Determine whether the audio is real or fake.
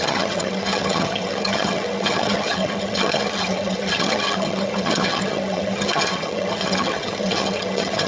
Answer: fake